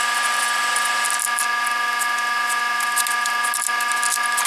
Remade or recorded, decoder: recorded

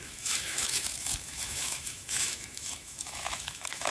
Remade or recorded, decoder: remade, autoencoder, DAC-VAE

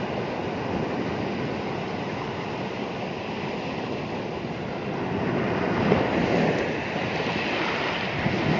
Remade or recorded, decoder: recorded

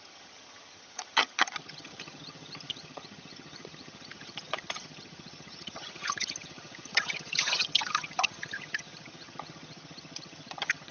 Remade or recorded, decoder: remade, vocoder, HiFi-GAN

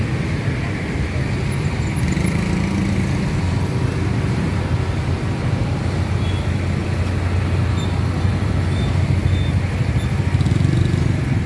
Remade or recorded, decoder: recorded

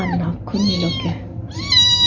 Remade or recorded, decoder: recorded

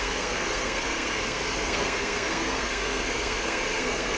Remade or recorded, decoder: remade, codec, SNAC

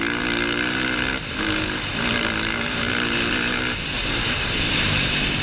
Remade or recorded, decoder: remade, vocoder, BigVGAN v2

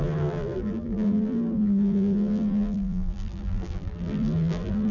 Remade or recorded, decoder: remade, vocoder, BigVGAN v2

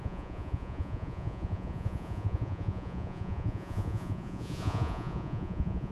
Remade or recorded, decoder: remade, vocoder, Vocos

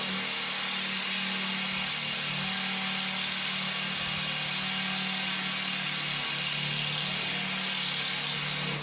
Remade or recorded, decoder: recorded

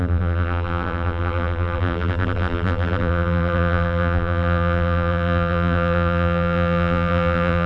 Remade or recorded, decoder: remade, vocoder, BigVGAN v2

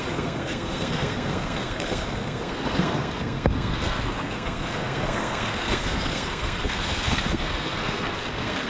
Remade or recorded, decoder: remade, codec, SNAC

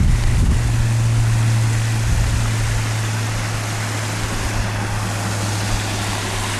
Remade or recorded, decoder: recorded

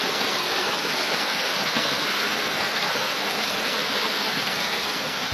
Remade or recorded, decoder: remade, codec, SNAC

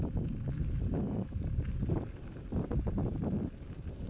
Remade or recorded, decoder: recorded